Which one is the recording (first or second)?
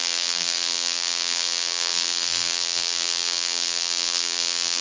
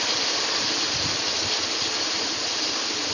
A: second